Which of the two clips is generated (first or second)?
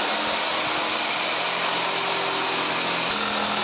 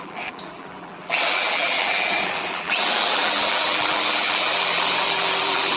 second